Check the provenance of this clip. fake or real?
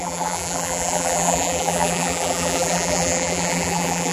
fake